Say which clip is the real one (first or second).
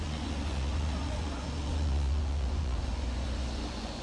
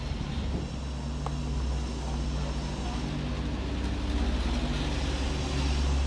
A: second